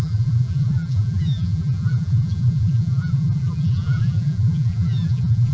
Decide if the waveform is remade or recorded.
remade